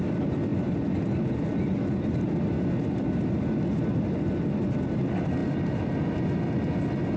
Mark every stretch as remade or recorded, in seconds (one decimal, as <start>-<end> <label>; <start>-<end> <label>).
0.0-0.5 recorded; 0.5-3.8 remade; 3.8-7.2 recorded